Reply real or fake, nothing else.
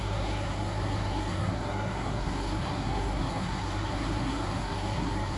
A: fake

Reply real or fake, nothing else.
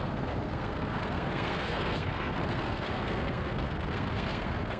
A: fake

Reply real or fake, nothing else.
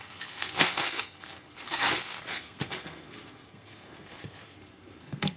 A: fake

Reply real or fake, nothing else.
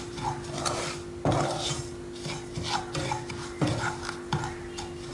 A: real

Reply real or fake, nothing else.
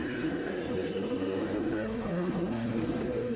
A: fake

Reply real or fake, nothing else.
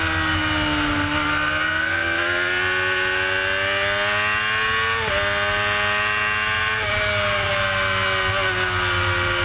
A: real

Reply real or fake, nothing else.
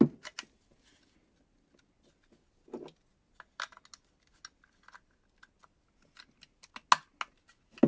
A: real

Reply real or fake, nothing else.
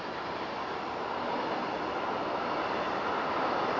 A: real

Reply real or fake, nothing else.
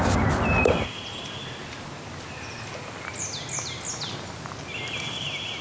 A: real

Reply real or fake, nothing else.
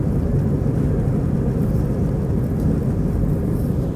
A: real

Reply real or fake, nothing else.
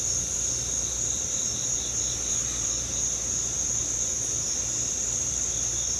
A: real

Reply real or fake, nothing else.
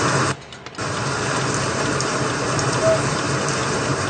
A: real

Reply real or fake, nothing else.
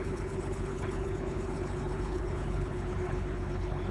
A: fake